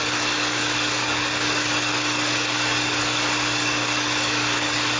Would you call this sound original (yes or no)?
no